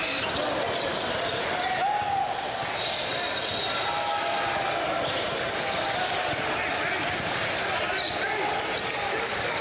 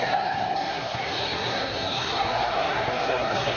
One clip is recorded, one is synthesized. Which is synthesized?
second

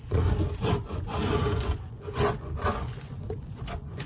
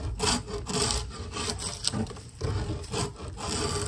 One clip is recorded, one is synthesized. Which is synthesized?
first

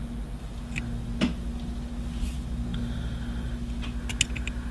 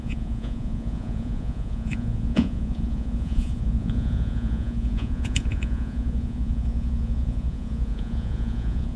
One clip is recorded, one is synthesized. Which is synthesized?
second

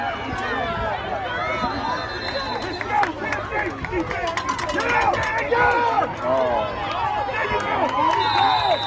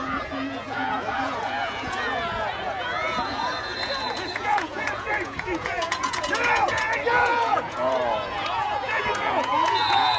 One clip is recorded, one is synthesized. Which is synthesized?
second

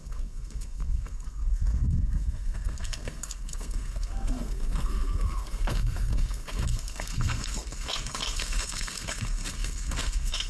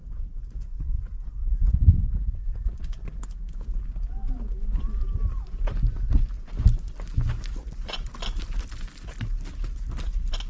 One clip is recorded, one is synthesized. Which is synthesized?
first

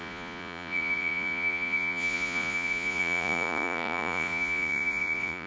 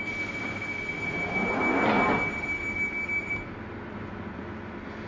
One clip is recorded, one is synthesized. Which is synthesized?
first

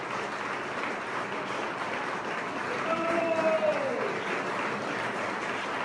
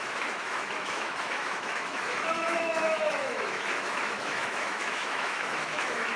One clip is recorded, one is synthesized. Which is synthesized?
second